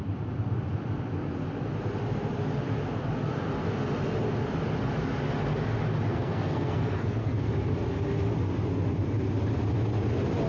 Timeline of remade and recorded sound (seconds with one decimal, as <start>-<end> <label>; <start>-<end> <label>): 0.0-6.1 recorded; 6.1-7.5 remade; 7.5-10.5 recorded